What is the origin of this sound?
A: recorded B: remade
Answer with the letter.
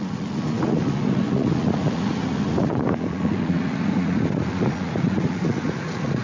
B